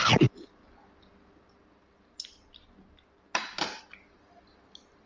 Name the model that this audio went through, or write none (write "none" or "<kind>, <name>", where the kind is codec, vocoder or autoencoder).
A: none